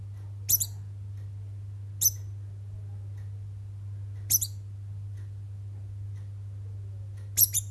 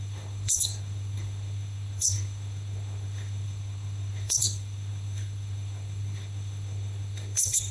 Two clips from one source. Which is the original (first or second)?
first